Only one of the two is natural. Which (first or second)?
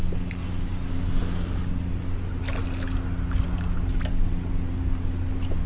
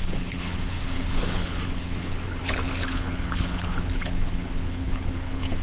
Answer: first